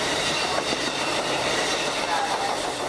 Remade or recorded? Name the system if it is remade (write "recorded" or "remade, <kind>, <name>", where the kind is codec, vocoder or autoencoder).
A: remade, vocoder, BigVGAN v2